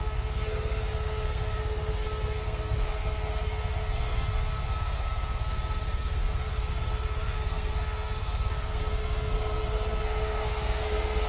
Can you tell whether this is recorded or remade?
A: remade